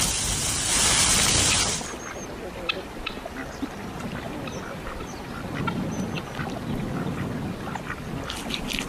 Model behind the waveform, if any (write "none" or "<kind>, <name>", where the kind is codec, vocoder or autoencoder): none